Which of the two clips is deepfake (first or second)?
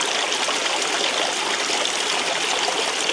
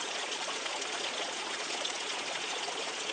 second